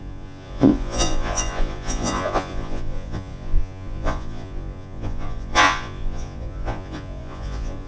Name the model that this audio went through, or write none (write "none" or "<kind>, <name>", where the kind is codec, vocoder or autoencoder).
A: vocoder, Vocos